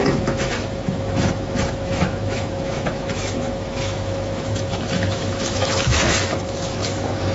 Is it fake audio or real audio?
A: fake